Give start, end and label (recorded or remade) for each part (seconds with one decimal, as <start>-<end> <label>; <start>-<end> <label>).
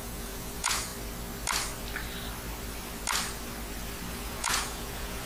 0.0-0.9 remade; 0.9-4.1 recorded; 4.1-5.3 remade